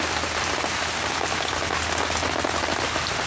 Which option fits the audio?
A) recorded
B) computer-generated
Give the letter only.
A